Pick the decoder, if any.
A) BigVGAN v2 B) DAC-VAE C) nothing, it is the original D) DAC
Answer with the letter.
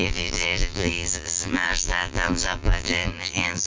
A